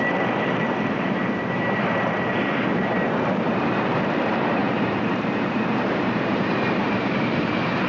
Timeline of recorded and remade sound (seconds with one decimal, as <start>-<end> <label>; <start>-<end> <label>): 0.0-7.9 remade